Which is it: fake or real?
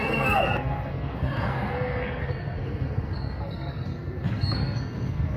fake